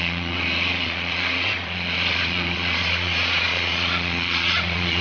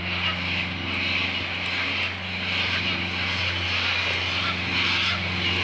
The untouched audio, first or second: second